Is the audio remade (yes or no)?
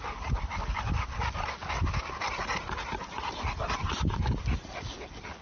no